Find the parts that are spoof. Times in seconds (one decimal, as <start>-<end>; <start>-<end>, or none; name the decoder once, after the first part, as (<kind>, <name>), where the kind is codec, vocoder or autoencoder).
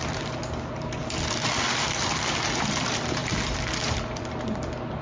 0.0-5.0 (vocoder, BigVGAN v2)